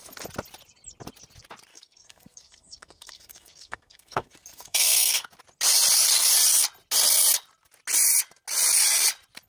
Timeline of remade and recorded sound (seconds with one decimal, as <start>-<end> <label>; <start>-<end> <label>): 0.0-1.7 recorded; 1.7-5.3 remade; 5.3-9.5 recorded